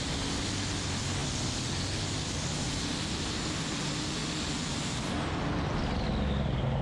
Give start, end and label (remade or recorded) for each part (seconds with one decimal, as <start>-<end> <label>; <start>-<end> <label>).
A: 0.0-6.8 recorded

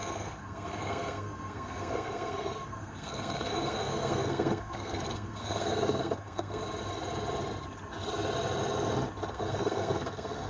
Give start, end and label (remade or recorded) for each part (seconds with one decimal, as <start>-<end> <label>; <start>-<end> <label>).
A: 0.0-6.6 remade; 6.6-9.3 recorded; 9.3-10.5 remade

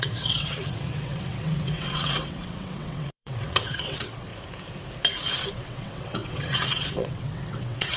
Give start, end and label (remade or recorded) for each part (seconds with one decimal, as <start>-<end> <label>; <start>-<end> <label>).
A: 0.0-4.3 remade; 4.3-5.5 recorded; 5.5-8.0 remade

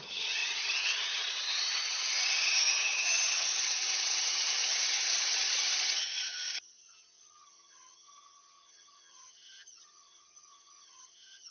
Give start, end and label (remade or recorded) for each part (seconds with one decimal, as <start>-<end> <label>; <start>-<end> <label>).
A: 0.0-11.5 remade

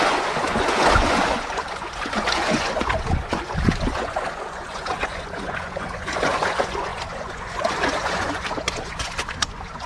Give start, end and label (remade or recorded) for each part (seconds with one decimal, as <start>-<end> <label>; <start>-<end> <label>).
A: 0.0-9.9 remade

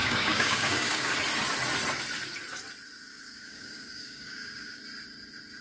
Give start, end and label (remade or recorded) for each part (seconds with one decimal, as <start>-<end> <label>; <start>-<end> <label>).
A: 0.0-1.1 remade; 1.1-3.1 recorded; 3.1-4.8 remade; 4.8-5.6 recorded

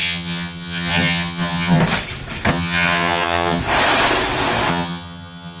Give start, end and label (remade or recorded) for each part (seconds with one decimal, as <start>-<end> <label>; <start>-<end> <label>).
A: 0.0-1.8 remade; 1.8-2.5 recorded; 2.5-3.6 remade; 3.6-4.7 recorded; 4.7-5.6 remade